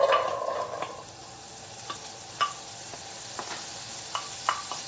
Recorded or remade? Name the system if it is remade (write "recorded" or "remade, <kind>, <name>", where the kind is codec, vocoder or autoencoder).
recorded